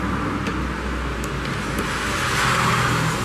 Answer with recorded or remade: recorded